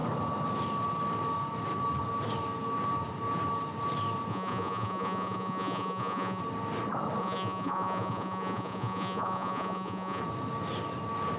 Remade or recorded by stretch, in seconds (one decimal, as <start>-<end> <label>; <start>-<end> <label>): 0.0-4.3 recorded; 4.3-6.4 remade; 6.4-7.2 recorded; 7.2-10.2 remade; 10.2-11.4 recorded